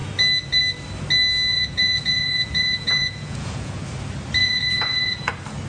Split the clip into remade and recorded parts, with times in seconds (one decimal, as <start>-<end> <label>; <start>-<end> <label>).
0.0-1.5 recorded; 1.5-3.8 remade; 3.8-4.4 recorded; 4.4-5.3 remade; 5.3-5.7 recorded